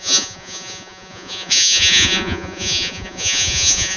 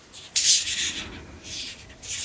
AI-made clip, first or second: first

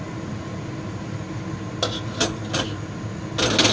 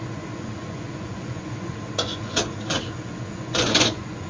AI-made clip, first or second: second